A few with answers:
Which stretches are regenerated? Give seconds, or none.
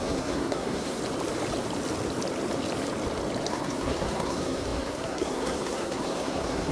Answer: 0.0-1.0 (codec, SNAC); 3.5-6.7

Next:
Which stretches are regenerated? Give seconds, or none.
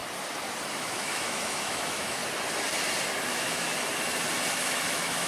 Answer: 0.7-2.2 (autoencoder, DAC-VAE); 3.3-3.7; 4.5-5.3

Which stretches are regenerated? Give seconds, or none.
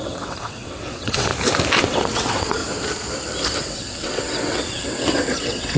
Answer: 0.0-1.3 (vocoder, WaveNeXt); 1.8-2.6; 3.6-5.8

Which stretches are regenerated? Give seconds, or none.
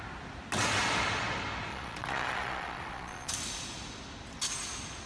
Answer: 1.7-3.3 (vocoder, Vocos)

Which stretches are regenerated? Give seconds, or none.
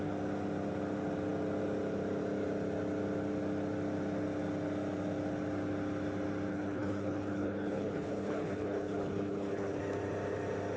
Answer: 6.5-9.8 (codec, HILCodec)